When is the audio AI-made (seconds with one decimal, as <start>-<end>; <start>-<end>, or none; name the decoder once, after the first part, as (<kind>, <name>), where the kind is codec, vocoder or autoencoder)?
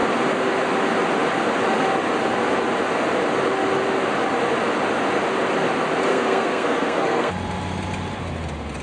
6.1-7.3 (codec, SNAC)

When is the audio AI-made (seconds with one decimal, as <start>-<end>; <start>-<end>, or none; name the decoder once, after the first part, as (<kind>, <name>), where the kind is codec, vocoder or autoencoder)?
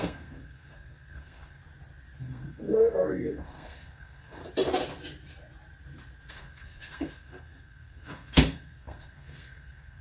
0.0-1.6 (codec, SNAC); 2.2-4.4; 6.3-10.0